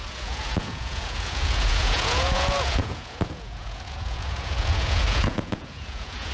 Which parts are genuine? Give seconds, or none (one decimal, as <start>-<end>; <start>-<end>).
none